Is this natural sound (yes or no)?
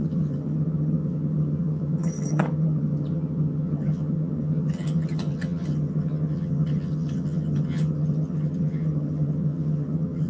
no